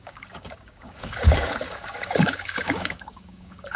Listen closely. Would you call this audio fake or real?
fake